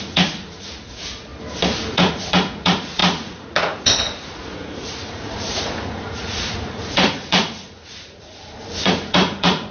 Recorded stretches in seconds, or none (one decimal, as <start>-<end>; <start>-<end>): 1.3-1.9